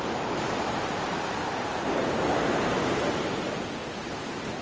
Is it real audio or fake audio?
fake